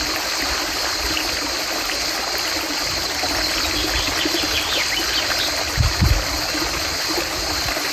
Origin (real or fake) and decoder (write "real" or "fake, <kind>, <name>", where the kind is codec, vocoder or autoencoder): real